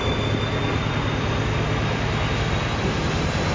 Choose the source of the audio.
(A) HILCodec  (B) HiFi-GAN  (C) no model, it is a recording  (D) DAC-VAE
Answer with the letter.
C